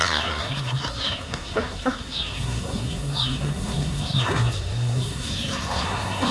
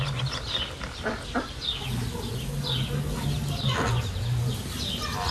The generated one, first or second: first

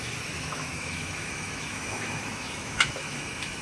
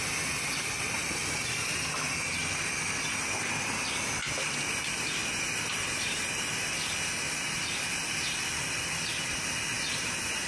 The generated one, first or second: first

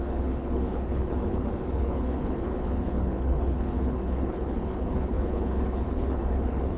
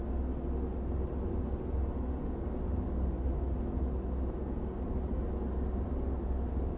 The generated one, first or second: first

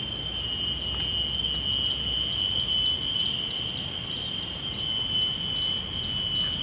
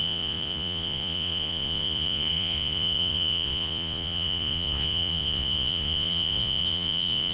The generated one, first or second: second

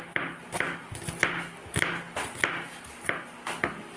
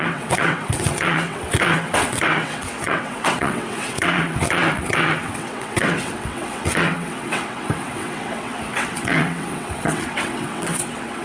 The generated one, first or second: second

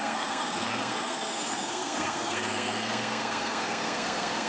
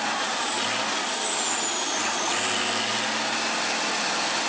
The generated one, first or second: first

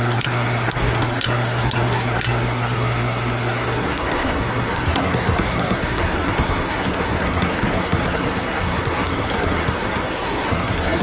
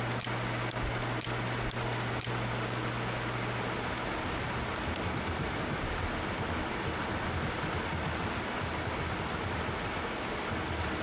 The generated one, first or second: first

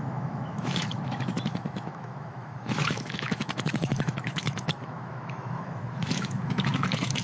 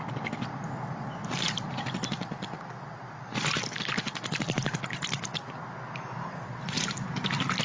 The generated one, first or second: first